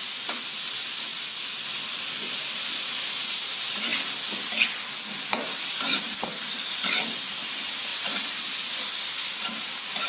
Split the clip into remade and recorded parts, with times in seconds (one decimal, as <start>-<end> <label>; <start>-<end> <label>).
0.0-10.1 recorded